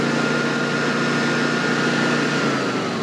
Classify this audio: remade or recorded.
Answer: recorded